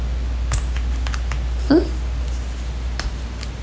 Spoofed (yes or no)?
no